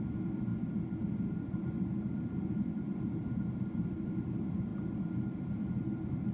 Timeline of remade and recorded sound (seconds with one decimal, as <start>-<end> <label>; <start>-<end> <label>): 0.0-6.3 recorded